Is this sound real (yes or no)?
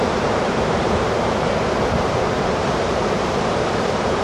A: no